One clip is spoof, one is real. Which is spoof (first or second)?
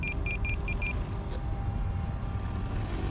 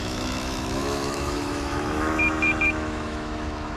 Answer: second